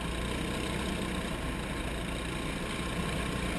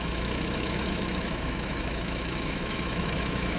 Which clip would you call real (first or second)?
first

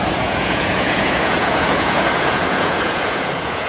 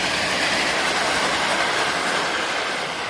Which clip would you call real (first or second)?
second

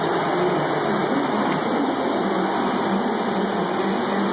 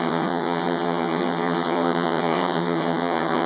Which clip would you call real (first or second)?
first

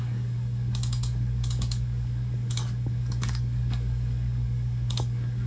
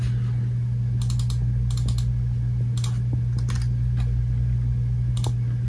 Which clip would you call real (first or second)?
second